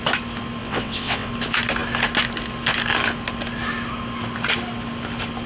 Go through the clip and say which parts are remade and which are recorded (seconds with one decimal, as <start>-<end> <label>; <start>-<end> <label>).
0.0-0.6 recorded; 0.6-1.3 remade; 1.3-5.5 recorded